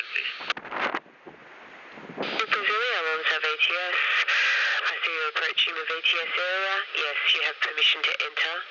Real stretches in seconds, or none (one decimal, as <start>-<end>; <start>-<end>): 0.0-8.7